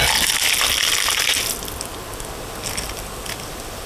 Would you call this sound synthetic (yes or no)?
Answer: no